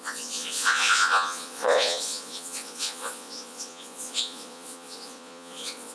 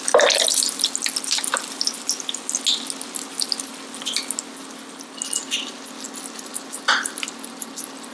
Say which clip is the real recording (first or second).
second